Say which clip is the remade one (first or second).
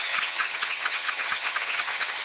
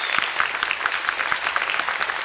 first